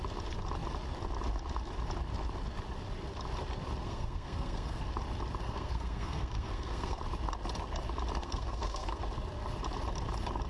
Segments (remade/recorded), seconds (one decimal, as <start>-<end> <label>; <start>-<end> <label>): 0.0-3.8 recorded; 3.8-4.8 remade; 4.8-5.4 recorded; 5.4-7.0 remade; 7.0-8.2 recorded; 8.2-9.0 remade; 9.0-10.5 recorded